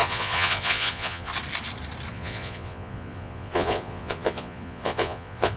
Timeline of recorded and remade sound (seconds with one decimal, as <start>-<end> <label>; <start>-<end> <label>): 0.0-1.3 remade; 1.3-2.1 recorded; 2.1-5.6 remade